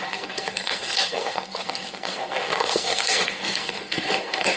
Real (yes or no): no